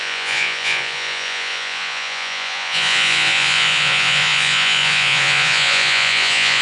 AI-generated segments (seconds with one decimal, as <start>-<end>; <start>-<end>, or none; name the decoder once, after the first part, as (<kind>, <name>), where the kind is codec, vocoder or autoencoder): 0.0-6.6 (vocoder, Vocos)